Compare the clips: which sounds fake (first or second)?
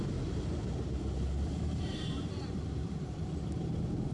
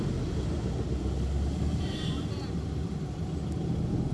first